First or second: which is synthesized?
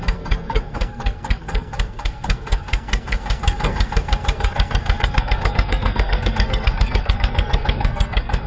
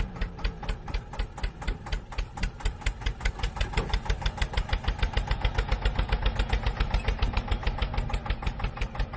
first